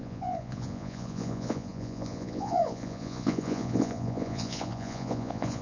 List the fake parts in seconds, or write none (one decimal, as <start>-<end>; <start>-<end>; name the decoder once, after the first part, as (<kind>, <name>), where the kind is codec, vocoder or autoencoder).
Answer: 0.0-5.6 (vocoder, Vocos)